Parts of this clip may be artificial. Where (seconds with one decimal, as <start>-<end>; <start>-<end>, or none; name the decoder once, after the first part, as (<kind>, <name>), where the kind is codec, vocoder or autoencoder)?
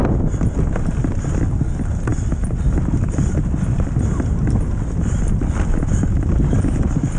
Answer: none